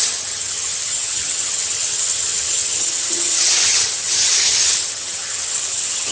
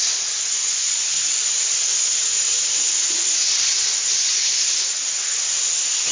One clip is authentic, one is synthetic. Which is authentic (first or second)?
second